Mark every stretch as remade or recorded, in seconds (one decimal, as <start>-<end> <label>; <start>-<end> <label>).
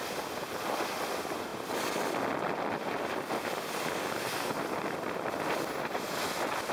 0.0-6.7 recorded